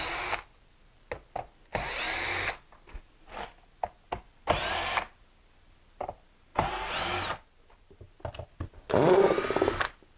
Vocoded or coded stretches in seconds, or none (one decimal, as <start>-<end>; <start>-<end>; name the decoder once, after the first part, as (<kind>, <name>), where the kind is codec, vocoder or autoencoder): 0.0-6.5 (vocoder, BigVGAN v2); 7.7-10.2